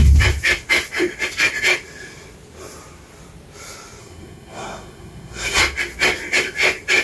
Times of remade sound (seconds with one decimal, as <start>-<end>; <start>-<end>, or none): 4.0-5.6

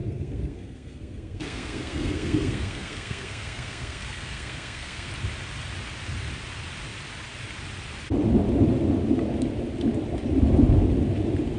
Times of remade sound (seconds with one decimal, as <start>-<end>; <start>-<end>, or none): 0.0-5.1

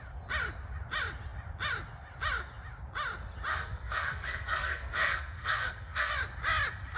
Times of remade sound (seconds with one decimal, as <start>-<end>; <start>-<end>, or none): 3.5-6.1